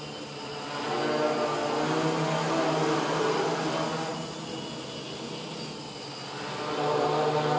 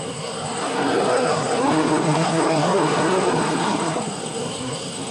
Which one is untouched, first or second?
first